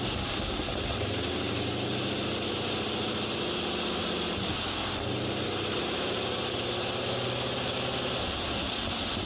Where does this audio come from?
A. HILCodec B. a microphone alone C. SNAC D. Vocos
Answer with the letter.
B